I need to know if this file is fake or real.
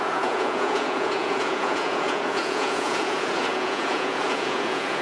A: fake